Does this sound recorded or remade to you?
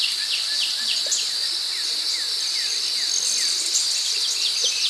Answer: recorded